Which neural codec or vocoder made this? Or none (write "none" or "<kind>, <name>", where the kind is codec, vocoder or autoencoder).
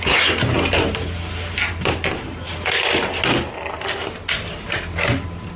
none